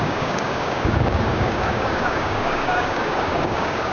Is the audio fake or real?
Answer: fake